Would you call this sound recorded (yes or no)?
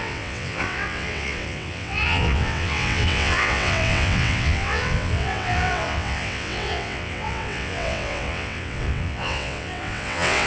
no